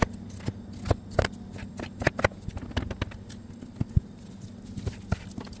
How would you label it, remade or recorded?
recorded